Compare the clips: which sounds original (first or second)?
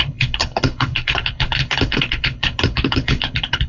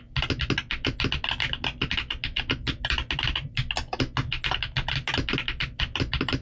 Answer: second